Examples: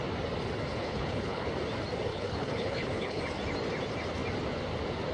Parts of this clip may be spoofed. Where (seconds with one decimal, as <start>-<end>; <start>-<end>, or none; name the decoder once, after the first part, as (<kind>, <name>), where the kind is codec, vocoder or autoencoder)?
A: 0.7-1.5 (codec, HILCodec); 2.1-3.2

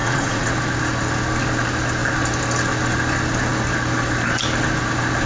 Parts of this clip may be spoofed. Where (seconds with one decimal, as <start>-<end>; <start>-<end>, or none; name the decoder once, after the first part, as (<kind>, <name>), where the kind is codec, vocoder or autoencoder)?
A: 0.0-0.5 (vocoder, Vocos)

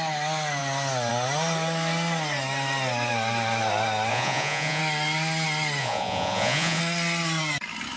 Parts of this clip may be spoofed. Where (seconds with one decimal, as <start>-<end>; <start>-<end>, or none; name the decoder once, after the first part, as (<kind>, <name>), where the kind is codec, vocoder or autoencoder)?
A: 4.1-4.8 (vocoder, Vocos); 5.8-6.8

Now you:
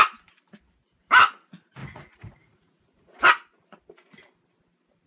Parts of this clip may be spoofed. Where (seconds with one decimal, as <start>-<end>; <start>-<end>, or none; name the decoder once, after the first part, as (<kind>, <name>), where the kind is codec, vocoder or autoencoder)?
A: 1.8-3.3 (vocoder, Vocos)

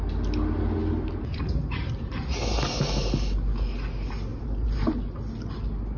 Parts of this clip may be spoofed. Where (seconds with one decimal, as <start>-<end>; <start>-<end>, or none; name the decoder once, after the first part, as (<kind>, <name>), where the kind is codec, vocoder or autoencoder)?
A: 0.8-2.1 (vocoder, BigVGAN v2); 4.3-5.0